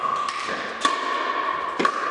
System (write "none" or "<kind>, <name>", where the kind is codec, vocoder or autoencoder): none